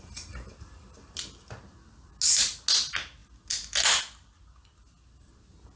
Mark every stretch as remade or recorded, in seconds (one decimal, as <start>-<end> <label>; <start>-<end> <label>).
0.0-5.8 recorded